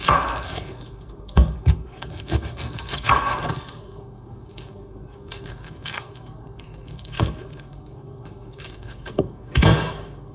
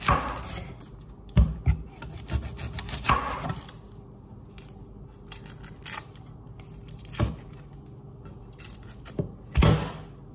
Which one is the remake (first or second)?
first